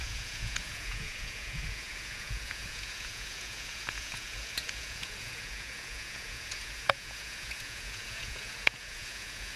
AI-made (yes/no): yes